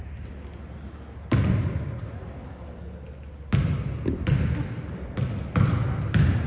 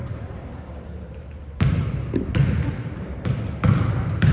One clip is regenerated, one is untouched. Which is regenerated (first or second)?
second